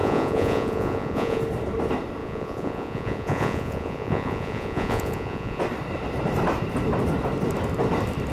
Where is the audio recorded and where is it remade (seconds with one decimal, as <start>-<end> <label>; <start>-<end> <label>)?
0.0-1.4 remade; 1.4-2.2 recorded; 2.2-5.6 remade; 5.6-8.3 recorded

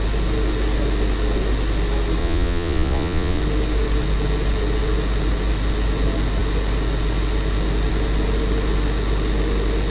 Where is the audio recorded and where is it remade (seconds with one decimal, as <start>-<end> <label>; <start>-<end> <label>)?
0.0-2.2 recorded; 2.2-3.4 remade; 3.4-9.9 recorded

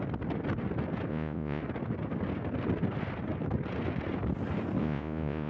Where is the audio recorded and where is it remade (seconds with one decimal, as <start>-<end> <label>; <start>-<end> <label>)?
0.0-1.1 recorded; 1.1-1.6 remade; 1.6-4.8 recorded; 4.8-5.5 remade

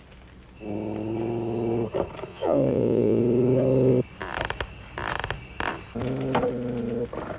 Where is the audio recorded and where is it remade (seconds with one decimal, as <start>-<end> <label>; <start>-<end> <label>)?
0.0-2.3 recorded; 2.3-3.2 remade; 3.2-7.4 recorded